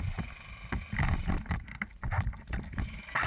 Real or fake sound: real